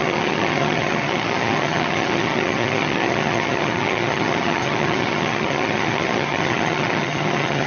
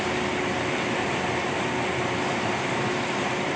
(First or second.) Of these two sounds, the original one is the second